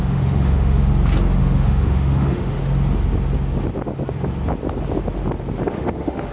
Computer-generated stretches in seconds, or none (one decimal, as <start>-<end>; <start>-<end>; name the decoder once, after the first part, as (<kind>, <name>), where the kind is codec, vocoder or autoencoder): 0.0-0.9 (autoencoder, DAC-VAE); 1.4-2.6; 5.7-6.3